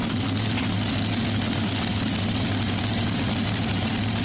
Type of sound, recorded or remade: recorded